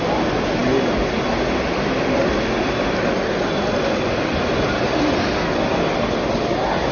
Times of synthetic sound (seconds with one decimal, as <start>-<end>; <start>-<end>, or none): none